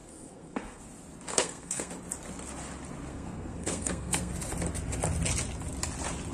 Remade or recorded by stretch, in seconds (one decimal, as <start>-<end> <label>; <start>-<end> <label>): 0.0-0.8 remade; 0.8-1.3 recorded; 1.3-1.9 remade; 1.9-3.1 recorded; 3.1-4.3 remade; 4.3-6.3 recorded